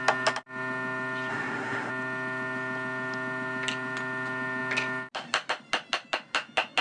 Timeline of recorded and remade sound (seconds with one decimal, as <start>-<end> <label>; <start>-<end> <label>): 0.0-1.3 recorded; 1.3-1.9 remade; 1.9-6.8 recorded